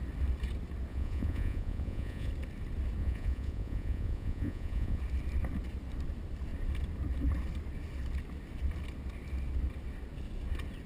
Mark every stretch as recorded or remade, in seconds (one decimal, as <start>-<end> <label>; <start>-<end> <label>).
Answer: 0.0-0.9 recorded; 0.9-2.3 remade; 2.3-3.0 recorded; 3.0-5.0 remade; 5.0-10.9 recorded